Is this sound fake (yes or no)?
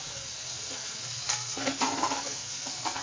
yes